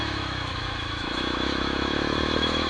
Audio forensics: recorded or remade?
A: remade